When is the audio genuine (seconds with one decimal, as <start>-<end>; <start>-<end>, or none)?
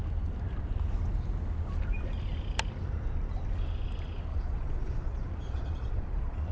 0.0-4.3